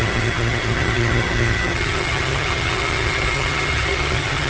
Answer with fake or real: fake